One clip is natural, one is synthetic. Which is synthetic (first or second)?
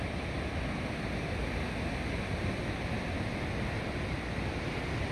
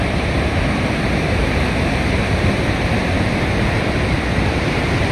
second